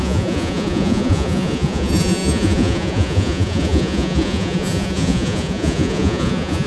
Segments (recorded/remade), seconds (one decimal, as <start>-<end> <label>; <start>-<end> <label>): 0.0-6.7 remade